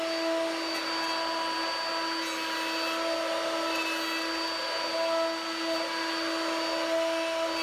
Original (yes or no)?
yes